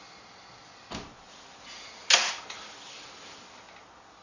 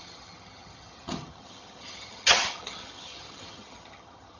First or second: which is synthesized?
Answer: second